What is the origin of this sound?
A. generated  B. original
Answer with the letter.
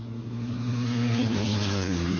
A